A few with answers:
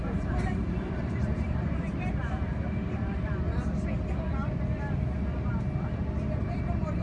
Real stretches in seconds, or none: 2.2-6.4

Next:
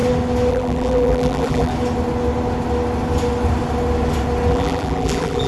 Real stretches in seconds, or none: 0.0-0.5; 1.7-4.5

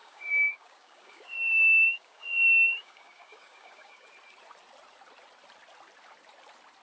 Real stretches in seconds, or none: 4.1-6.8

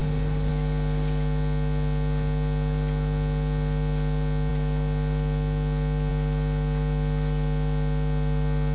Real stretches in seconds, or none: 0.5-8.7

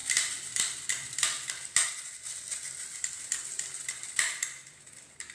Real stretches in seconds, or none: 0.0-3.2

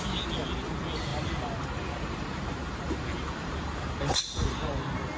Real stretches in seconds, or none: 0.0-1.1; 4.2-5.2

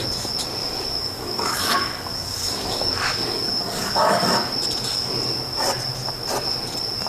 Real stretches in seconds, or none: 0.0-0.6; 4.5-7.1

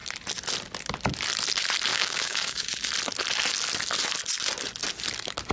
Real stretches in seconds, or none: 0.0-1.9; 2.9-5.5